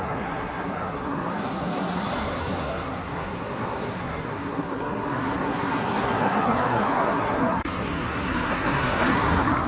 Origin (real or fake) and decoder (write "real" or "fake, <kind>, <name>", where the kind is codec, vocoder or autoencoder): fake, codec, SNAC